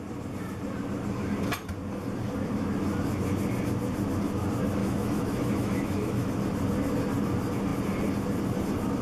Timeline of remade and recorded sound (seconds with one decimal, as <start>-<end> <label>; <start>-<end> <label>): 0.0-4.8 recorded; 4.8-6.3 remade; 6.3-9.0 recorded